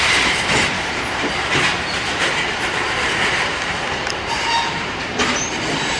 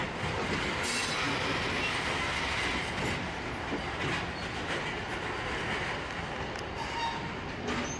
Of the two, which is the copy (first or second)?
first